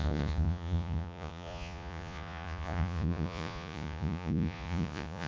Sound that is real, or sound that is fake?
fake